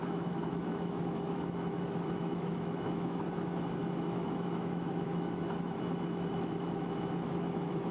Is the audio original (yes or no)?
no